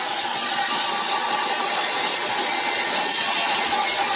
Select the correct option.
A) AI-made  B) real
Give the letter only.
A